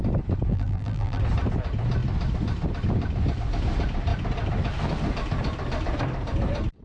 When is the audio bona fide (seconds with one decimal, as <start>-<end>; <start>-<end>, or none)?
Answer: 0.0-0.5; 1.2-6.8

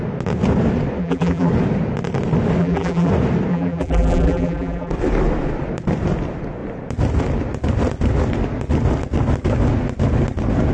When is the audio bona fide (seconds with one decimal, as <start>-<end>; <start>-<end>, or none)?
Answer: 0.0-1.0; 1.5-2.6; 3.1-3.5; 4.9-10.7

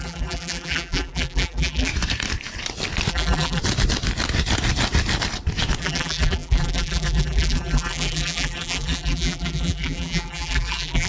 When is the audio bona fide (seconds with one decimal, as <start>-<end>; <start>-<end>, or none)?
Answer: 1.9-3.1; 3.6-5.8

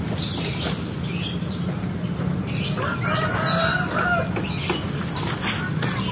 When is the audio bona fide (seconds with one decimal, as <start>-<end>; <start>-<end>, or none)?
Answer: 0.0-6.1

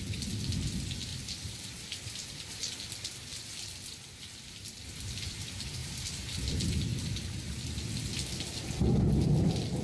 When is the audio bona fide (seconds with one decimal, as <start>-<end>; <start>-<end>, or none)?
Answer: 0.0-1.1; 2.5-5.8; 6.5-9.8

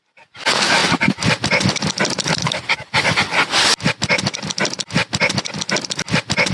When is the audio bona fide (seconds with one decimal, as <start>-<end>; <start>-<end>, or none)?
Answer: 0.0-6.5

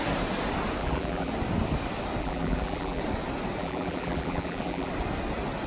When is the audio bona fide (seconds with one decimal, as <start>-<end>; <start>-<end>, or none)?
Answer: 0.0-0.8; 1.3-2.2; 3.0-3.6; 4.9-5.7